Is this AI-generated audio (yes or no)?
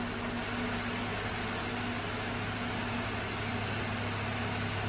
no